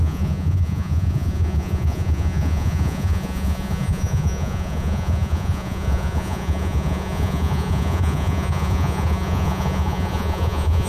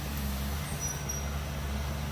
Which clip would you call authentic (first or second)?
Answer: second